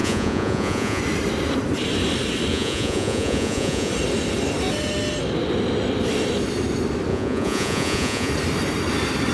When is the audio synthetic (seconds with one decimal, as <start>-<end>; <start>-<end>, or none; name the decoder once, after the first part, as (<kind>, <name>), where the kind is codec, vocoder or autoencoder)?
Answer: 0.0-1.0 (vocoder, Vocos); 2.5-3.9; 7.1-8.3